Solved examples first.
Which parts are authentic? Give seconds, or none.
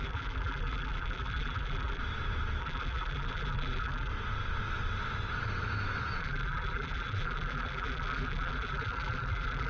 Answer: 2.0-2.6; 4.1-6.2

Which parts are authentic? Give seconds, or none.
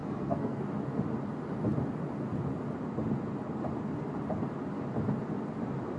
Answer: 0.6-6.0